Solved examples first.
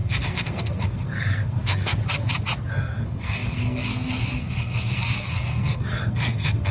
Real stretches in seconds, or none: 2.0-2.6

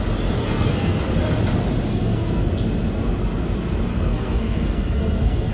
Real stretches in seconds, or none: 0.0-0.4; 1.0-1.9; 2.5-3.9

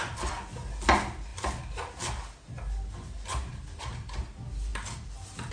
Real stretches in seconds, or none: 0.0-5.5

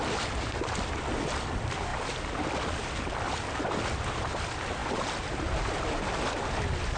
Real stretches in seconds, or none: 0.0-7.0

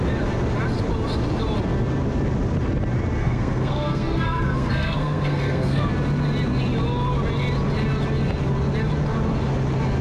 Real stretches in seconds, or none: 0.0-3.2; 5.9-10.0

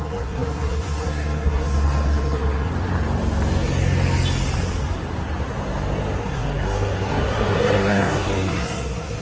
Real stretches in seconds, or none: 2.7-6.2

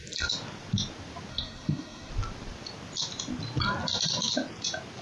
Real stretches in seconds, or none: 0.0-1.3; 2.1-5.0